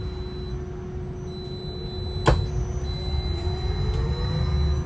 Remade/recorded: recorded